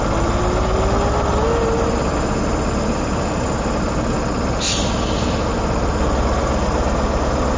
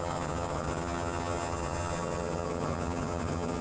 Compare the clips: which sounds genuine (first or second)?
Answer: first